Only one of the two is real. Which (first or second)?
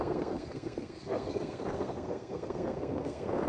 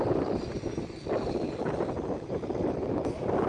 second